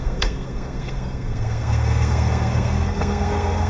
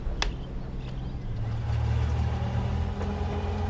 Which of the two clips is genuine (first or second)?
second